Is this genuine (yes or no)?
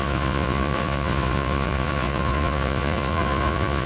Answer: no